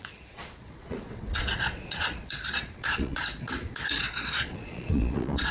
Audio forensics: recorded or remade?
remade